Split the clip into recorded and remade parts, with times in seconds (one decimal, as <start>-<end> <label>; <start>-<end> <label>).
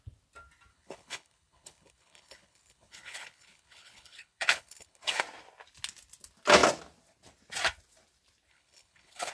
0.0-0.7 recorded; 0.7-5.2 remade; 5.2-8.5 recorded; 8.5-9.3 remade